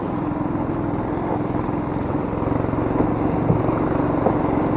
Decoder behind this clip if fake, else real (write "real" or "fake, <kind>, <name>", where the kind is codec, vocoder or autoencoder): real